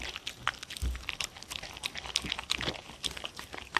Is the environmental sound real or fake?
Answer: real